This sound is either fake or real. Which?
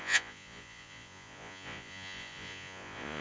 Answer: fake